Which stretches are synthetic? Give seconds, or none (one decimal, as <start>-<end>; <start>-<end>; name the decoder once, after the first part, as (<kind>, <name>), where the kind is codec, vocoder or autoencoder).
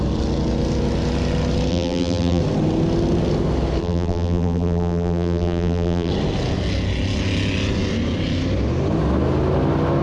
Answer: 1.7-2.4 (vocoder, BigVGAN v2); 3.8-6.1